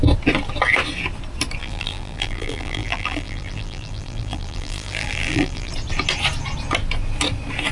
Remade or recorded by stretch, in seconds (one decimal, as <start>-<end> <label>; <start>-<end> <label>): 0.0-1.6 recorded; 1.6-5.7 remade; 5.7-7.7 recorded